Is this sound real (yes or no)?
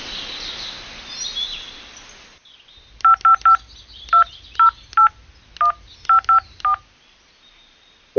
yes